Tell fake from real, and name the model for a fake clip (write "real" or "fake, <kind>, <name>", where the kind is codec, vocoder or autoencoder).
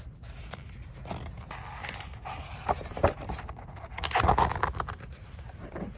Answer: real